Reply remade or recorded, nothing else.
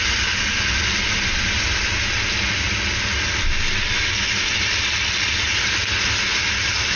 recorded